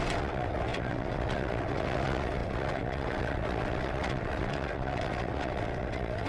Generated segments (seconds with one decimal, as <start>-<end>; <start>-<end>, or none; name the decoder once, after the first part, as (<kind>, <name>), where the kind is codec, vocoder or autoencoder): 0.0-6.3 (vocoder, WaveNeXt)